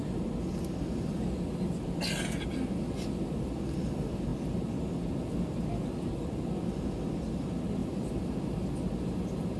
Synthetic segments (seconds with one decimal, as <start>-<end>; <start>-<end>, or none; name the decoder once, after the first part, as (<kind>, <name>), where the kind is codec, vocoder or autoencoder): none